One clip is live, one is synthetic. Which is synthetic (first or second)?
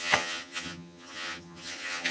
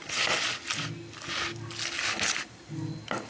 first